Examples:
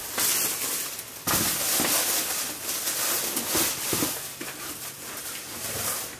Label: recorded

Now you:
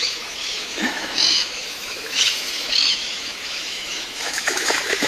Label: remade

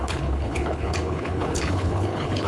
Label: remade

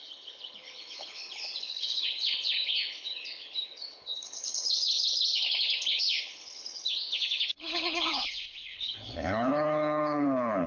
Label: remade